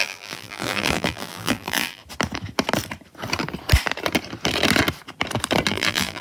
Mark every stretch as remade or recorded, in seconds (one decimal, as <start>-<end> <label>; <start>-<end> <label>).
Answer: 0.0-2.0 remade; 2.0-5.7 recorded; 5.7-6.2 remade